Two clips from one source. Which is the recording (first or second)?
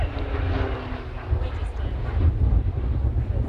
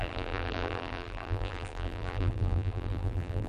first